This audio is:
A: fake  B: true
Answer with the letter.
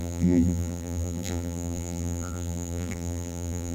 A